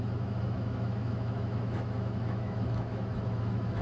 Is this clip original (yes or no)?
no